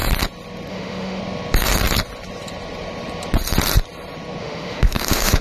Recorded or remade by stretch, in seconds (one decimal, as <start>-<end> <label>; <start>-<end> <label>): 0.0-0.7 recorded; 0.7-1.2 remade; 1.2-4.4 recorded; 4.4-5.4 remade